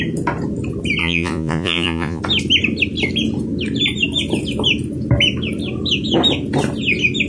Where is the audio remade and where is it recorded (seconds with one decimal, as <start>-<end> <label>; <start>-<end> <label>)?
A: 0.0-1.0 recorded; 1.0-2.2 remade; 2.2-7.3 recorded